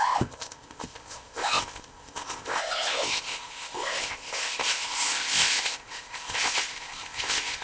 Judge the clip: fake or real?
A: fake